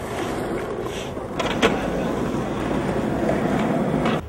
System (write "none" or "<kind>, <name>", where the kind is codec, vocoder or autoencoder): none